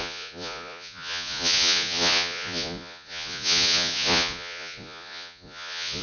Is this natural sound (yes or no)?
no